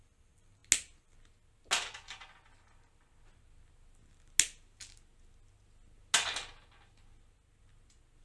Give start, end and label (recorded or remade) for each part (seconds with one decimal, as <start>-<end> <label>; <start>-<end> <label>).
0.0-8.2 recorded